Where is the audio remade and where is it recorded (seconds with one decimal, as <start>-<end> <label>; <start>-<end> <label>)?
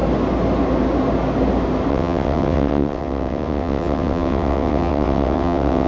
0.0-1.9 recorded; 1.9-5.9 remade